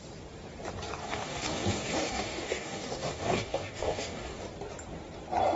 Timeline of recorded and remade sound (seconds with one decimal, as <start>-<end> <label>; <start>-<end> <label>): 0.0-1.0 recorded; 1.0-4.4 remade; 4.4-5.6 recorded